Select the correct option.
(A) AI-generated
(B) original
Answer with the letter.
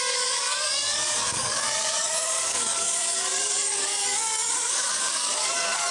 A